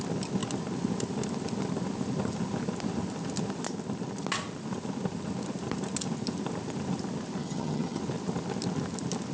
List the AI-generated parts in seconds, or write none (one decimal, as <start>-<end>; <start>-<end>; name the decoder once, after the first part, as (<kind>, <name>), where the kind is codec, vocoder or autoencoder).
7.4-8.0 (vocoder, HiFi-GAN)